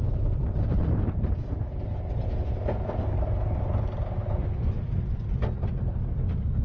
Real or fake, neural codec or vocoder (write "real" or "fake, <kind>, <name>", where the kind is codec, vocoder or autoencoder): real